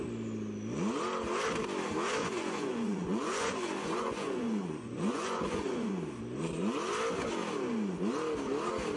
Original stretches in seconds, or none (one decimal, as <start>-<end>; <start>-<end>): 0.0-2.2; 5.9-9.0

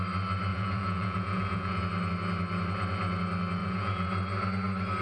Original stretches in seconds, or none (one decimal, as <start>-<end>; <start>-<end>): 0.0-0.5; 1.8-3.6; 4.1-5.0

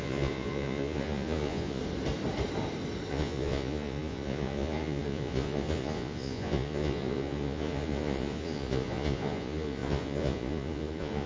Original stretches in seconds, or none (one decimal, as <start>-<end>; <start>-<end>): 1.8-3.1

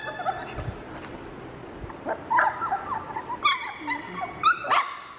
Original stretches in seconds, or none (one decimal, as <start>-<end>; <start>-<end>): 0.0-5.2

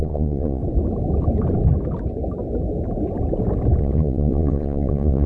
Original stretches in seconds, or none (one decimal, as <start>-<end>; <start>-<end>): 0.6-3.8

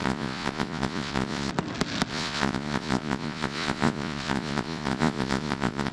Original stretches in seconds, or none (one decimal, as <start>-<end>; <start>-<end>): 1.5-2.1